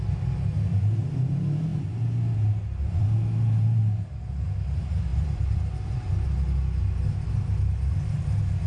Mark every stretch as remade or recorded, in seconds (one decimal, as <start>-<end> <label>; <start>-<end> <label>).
0.0-5.1 recorded; 5.1-6.1 remade; 6.1-8.7 recorded